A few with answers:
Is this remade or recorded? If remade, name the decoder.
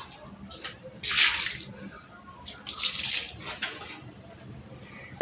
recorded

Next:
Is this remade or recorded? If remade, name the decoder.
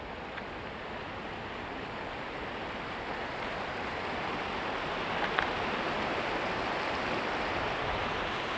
recorded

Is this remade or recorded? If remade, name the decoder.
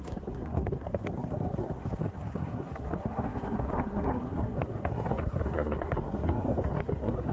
remade, codec, SNAC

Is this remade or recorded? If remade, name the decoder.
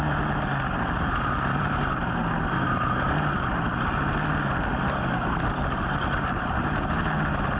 recorded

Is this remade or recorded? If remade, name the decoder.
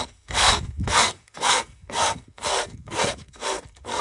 remade, codec, SNAC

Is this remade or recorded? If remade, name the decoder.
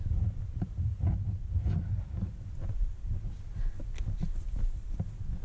recorded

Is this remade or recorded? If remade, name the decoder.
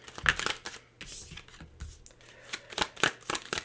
recorded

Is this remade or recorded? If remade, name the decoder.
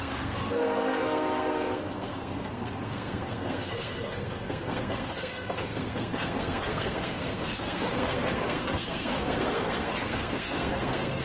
remade, codec, SNAC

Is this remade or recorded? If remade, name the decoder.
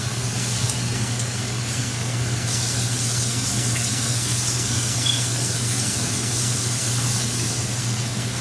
remade, codec, SNAC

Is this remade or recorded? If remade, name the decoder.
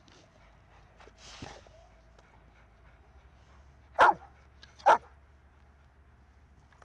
recorded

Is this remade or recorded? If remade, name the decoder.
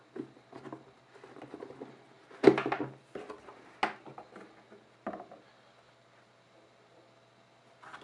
recorded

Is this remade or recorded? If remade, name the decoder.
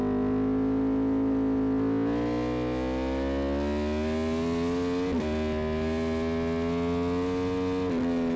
recorded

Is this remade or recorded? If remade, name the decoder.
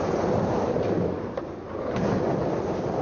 recorded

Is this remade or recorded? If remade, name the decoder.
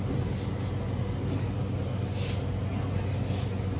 recorded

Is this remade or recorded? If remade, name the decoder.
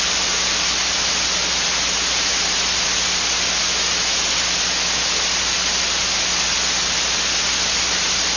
recorded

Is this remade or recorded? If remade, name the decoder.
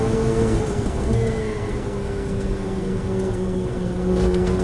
remade, codec, SNAC